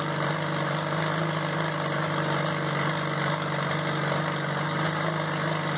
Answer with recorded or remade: recorded